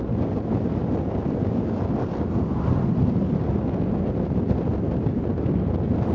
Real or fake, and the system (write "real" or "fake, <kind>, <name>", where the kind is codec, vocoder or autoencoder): real